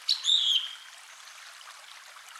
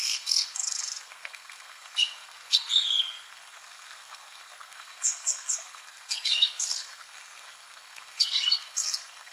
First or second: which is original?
first